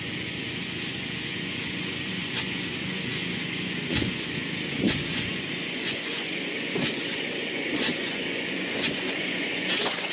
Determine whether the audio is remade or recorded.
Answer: remade